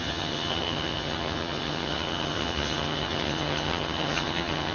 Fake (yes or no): yes